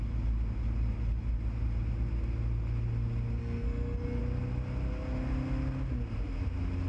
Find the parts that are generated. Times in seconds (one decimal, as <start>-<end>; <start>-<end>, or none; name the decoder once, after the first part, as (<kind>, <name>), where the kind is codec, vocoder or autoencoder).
3.4-4.2 (codec, SNAC)